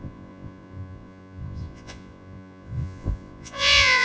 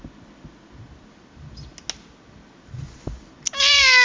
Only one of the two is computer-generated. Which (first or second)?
first